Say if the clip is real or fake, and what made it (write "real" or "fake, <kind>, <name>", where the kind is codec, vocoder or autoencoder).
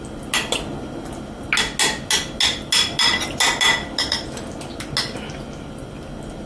real